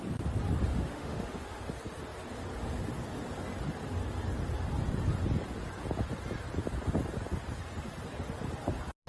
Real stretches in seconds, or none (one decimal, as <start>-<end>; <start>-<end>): 0.0-0.7; 1.6-9.1